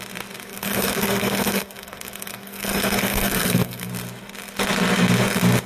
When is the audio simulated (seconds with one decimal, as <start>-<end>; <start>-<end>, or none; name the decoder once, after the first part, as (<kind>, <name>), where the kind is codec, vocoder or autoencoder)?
0.5-3.9 (codec, SNAC)